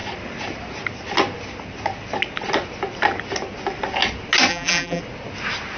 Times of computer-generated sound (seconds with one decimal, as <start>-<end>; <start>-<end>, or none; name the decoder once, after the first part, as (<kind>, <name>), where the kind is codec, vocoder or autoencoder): 4.5-5.0 (vocoder, BigVGAN v2)